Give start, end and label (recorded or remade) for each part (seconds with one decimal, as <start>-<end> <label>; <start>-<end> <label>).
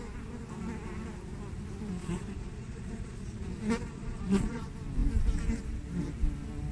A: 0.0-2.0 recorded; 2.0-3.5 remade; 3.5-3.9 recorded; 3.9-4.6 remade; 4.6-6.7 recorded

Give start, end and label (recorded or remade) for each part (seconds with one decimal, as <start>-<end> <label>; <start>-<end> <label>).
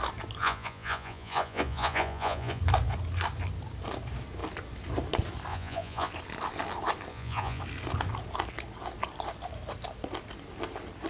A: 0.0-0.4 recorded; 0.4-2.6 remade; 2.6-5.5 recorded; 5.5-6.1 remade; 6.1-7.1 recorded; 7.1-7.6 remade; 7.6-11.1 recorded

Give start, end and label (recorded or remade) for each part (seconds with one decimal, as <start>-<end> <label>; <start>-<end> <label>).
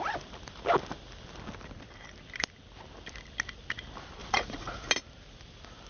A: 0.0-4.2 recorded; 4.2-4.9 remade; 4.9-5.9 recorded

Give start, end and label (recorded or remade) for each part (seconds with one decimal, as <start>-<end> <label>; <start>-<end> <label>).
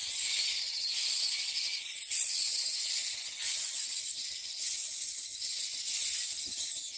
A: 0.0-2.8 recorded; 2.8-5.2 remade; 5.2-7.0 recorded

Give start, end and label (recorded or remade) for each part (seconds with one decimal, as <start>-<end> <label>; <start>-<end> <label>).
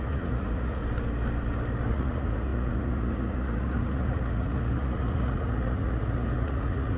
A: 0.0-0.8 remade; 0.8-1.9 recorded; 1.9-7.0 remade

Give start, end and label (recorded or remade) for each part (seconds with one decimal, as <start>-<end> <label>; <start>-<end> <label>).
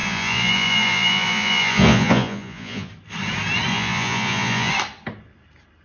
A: 0.0-2.9 remade; 2.9-3.7 recorded; 3.7-4.7 remade; 4.7-5.8 recorded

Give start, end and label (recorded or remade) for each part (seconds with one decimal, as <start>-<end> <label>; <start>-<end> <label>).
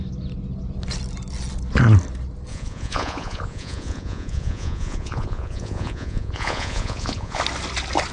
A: 0.0-2.5 recorded; 2.5-7.4 remade; 7.4-8.1 recorded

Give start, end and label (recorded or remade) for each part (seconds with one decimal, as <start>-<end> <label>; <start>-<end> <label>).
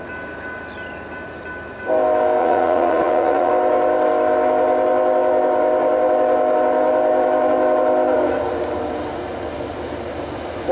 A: 0.0-2.4 recorded; 2.4-3.5 remade; 3.5-10.7 recorded